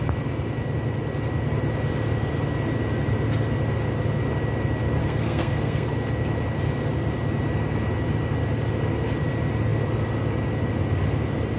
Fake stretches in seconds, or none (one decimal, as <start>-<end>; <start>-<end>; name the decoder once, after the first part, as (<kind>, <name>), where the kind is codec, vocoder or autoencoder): 5.0-5.9 (codec, SNAC)